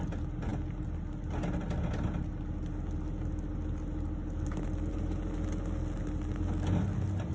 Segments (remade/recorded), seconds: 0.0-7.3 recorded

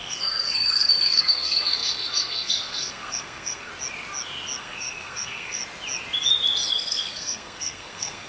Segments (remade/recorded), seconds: 0.0-3.7 remade; 3.7-4.6 recorded; 4.6-5.6 remade; 5.6-6.7 recorded; 6.7-8.3 remade

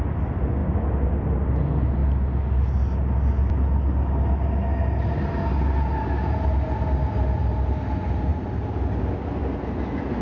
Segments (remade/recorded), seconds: 0.0-10.2 recorded

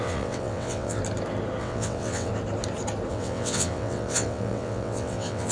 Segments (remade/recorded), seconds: 0.0-1.0 remade; 1.0-1.6 recorded; 1.6-2.3 remade; 2.3-3.1 recorded; 3.1-5.5 remade

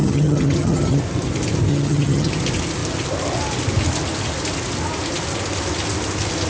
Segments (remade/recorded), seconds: 0.0-1.0 remade; 1.0-1.7 recorded; 1.7-2.3 remade; 2.3-6.5 recorded

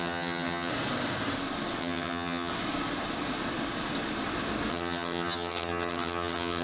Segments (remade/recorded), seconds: 0.0-0.7 remade; 0.7-1.8 recorded; 1.8-2.5 remade; 2.5-4.7 recorded; 4.7-6.6 remade